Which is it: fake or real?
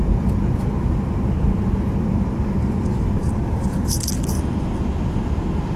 real